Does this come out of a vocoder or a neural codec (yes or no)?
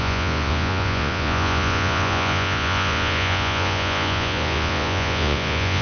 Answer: yes